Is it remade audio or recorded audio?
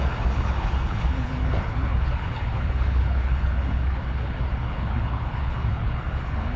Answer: remade